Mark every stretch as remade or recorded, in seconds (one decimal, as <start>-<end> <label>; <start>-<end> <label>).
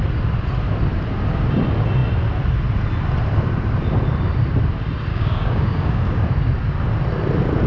0.0-5.1 recorded; 5.1-6.2 remade; 6.2-7.7 recorded